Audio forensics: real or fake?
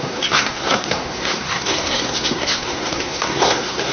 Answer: fake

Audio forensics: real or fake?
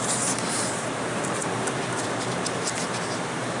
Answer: fake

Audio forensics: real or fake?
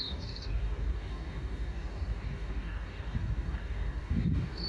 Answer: fake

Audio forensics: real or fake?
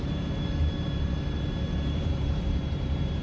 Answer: fake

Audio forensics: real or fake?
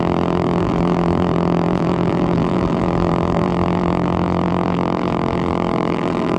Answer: fake